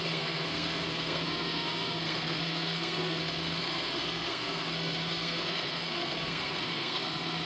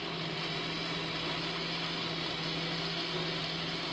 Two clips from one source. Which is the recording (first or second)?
second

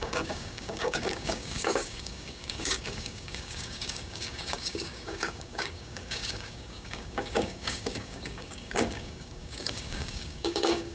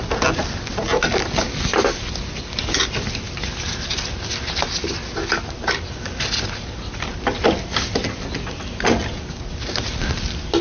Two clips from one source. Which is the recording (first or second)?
second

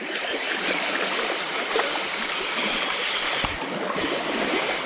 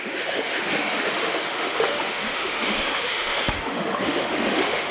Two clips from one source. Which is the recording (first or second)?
first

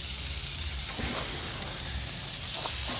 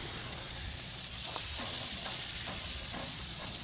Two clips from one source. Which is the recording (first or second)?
first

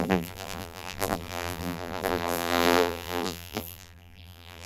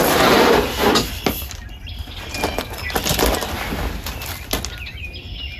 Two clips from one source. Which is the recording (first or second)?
second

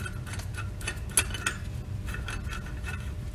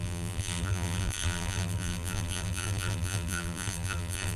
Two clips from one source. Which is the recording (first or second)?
first